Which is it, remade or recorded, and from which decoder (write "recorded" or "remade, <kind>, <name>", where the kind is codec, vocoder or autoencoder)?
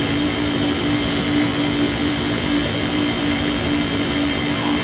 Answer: remade, vocoder, BigVGAN v2